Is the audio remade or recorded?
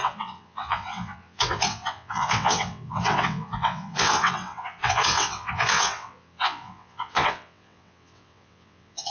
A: remade